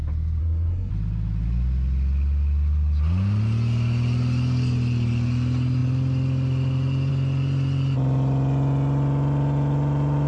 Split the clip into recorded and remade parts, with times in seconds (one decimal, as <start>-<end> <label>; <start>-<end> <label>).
0.0-0.4 recorded; 0.4-0.9 remade; 0.9-10.3 recorded